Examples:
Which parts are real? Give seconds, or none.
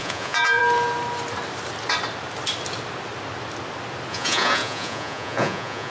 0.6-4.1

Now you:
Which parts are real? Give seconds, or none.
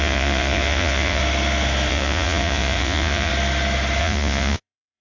1.2-1.9; 3.3-4.0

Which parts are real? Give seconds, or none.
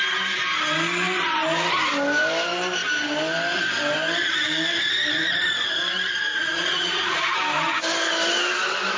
0.0-6.3; 7.4-9.0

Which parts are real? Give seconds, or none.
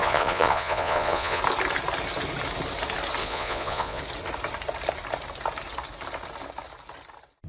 1.4-3.2; 4.0-7.5